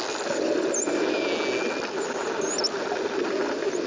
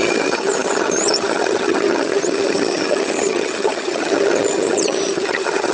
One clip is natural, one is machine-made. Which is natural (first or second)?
first